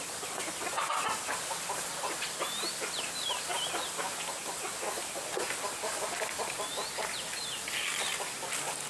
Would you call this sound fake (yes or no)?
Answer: no